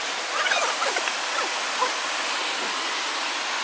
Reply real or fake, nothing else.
real